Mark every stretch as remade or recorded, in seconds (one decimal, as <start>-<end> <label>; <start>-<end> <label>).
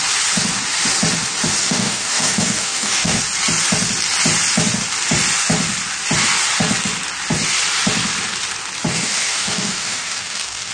0.0-1.6 recorded; 1.6-3.2 remade; 3.2-8.9 recorded; 8.9-10.7 remade